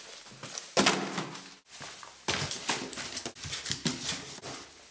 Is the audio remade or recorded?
recorded